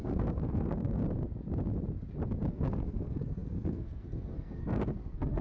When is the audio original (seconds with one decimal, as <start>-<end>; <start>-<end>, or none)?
1.0-2.5